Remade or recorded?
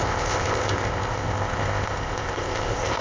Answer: remade